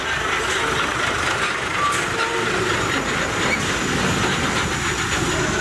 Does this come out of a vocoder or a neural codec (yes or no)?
no